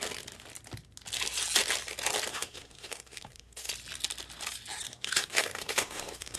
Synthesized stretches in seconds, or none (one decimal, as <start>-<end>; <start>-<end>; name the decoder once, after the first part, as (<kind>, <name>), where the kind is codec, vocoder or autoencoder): 2.3-3.7 (codec, SNAC); 4.9-6.4